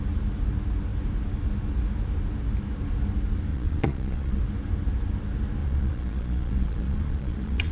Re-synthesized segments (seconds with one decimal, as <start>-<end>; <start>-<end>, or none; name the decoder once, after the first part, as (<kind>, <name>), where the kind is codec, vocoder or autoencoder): 3.5-4.4 (vocoder, Vocos); 5.6-7.7